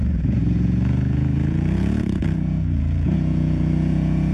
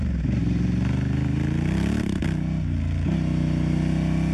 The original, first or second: second